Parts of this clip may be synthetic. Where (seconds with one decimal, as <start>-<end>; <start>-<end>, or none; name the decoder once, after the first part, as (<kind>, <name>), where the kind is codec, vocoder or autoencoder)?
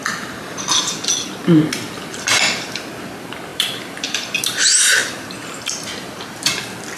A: 3.5-4.4 (vocoder, BigVGAN v2); 5.0-5.9